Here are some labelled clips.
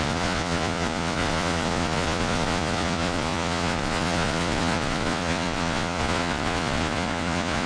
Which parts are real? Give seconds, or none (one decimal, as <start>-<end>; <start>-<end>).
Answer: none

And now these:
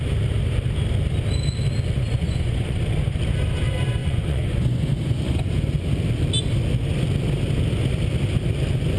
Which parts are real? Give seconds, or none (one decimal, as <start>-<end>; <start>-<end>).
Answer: 0.0-2.1; 2.8-4.0; 5.5-9.0

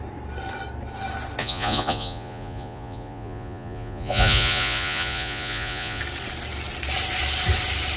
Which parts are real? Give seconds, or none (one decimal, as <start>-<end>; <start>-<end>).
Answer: 0.0-1.4; 6.0-8.0